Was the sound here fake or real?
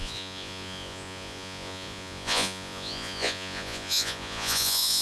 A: fake